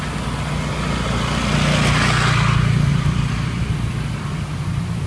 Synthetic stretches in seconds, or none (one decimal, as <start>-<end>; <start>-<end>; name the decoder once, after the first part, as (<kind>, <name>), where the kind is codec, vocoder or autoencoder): 2.9-3.6 (vocoder, BigVGAN v2)